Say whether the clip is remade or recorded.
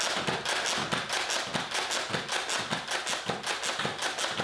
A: recorded